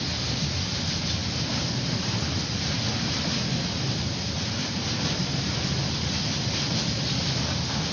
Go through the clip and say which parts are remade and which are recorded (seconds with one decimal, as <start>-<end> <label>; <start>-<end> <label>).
0.0-1.2 recorded; 1.2-5.4 remade; 5.4-7.9 recorded